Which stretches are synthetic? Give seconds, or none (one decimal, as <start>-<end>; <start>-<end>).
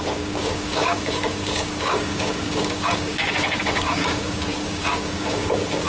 0.0-5.9